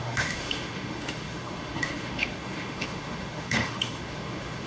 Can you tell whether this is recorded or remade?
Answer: remade